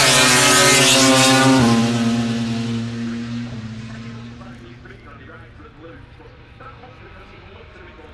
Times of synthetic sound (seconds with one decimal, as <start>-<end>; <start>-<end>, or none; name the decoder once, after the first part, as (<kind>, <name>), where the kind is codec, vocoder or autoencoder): none